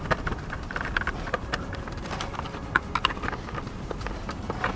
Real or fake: real